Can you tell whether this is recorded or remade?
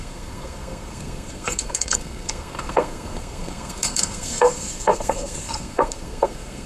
remade